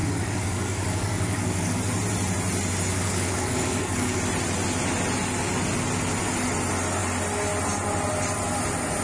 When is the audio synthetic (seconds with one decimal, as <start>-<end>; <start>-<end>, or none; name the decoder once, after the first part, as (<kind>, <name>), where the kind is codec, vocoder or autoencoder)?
0.0-1.8 (codec, DAC); 2.9-4.2